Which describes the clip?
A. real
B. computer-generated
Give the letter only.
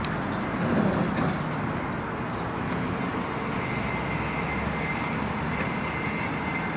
A